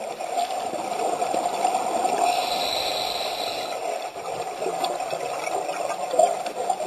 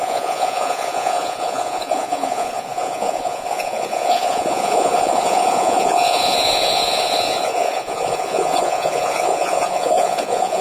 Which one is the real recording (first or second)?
first